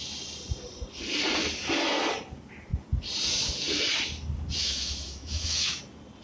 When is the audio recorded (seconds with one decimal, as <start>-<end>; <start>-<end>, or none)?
0.0-4.6; 5.8-6.2

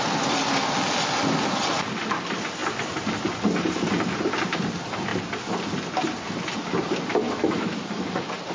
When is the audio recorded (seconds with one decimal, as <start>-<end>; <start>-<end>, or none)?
0.0-7.1; 7.8-8.5

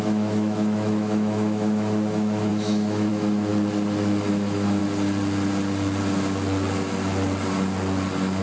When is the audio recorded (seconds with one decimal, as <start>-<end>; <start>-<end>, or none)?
3.5-4.3; 4.8-8.4

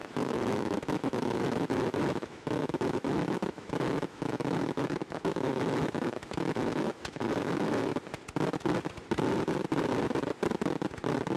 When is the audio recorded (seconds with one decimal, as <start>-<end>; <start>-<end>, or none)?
7.9-11.4

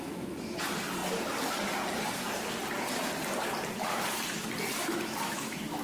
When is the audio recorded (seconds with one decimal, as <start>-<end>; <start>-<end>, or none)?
0.6-4.8